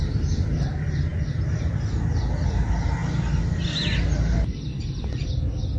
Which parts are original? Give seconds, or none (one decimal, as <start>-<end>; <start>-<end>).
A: 0.0-5.8